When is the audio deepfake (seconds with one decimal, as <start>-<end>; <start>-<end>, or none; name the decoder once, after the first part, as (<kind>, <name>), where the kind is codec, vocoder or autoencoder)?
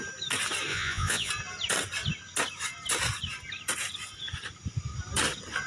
0.7-1.3 (vocoder, Vocos)